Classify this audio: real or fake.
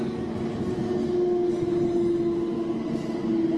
real